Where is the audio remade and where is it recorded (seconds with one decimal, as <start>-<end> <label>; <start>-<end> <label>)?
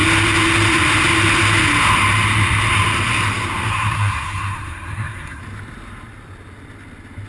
0.0-3.7 recorded; 3.7-5.4 remade; 5.4-7.3 recorded